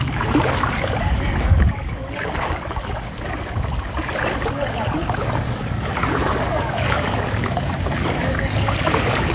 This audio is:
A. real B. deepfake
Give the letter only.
B